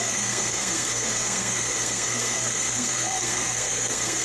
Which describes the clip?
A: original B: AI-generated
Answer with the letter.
B